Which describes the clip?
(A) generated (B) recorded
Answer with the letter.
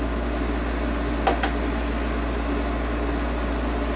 B